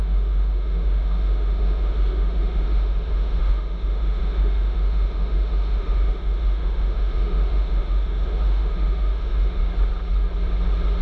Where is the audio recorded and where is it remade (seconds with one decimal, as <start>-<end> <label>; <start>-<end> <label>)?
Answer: 0.0-9.6 remade; 9.6-11.0 recorded